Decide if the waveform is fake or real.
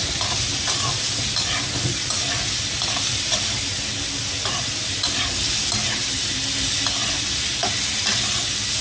real